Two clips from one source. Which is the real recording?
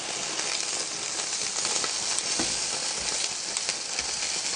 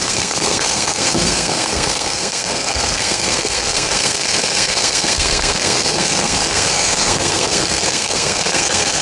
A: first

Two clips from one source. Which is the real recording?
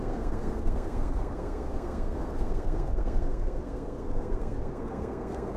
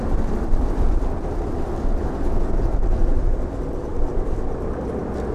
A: second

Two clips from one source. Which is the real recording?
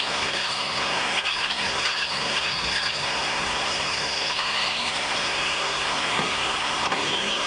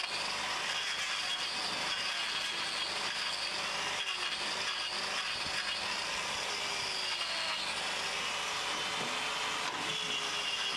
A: second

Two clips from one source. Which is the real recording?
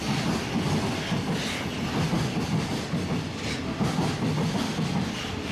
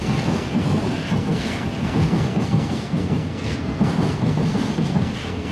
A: first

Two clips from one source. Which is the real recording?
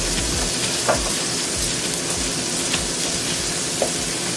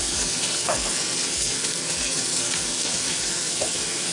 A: first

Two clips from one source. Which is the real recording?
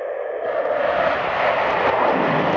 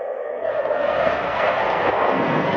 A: first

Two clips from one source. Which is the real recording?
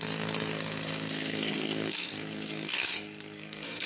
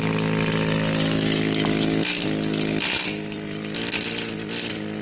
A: second